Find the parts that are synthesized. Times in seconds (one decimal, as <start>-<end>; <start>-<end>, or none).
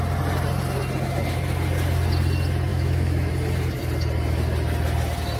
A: 2.7-3.3